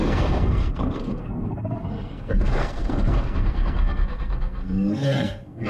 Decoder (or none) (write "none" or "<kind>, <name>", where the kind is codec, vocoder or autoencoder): codec, SNAC